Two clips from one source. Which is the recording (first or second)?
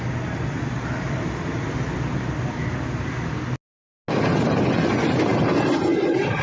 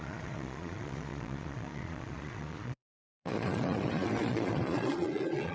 first